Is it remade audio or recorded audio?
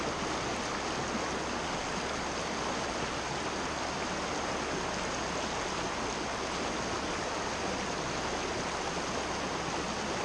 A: recorded